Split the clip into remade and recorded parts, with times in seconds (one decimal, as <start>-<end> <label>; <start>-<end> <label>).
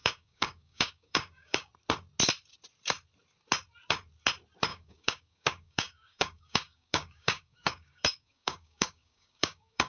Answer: 0.0-1.7 remade; 1.7-4.7 recorded; 4.7-9.9 remade